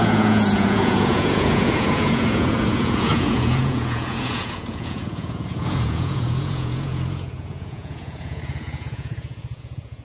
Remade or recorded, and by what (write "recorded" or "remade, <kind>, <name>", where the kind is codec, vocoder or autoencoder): remade, vocoder, Vocos